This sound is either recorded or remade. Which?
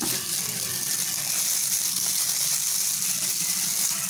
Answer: recorded